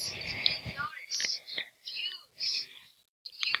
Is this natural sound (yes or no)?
yes